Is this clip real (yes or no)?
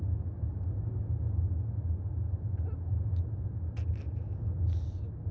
yes